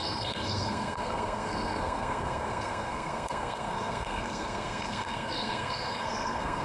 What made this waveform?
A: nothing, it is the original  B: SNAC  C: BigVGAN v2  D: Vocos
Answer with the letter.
B